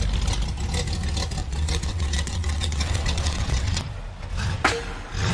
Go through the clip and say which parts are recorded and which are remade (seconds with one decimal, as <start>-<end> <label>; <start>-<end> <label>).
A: 0.0-1.4 recorded; 1.4-3.8 remade; 3.8-5.3 recorded